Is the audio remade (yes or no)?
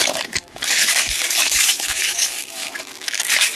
yes